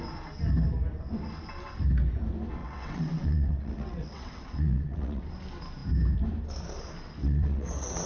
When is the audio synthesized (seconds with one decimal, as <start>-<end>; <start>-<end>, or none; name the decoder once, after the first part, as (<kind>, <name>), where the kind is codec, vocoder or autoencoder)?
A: 2.6-5.2 (vocoder, WaveNeXt); 7.2-8.1